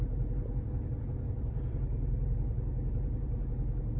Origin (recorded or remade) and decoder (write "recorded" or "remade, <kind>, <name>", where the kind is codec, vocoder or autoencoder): recorded